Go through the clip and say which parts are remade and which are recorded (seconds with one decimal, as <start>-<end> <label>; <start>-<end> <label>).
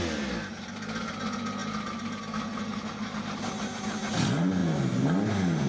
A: 0.0-5.7 recorded